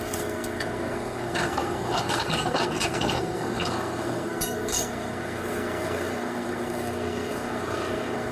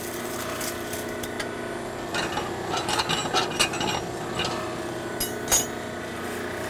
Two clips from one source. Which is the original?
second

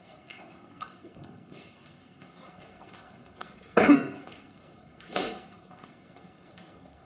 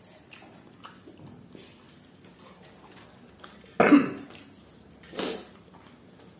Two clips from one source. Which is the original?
second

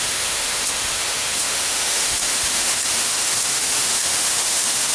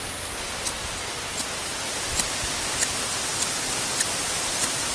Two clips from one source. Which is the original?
second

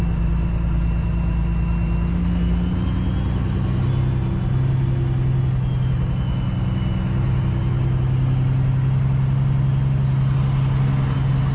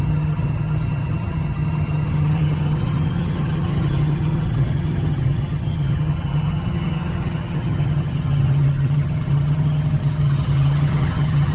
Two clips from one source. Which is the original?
first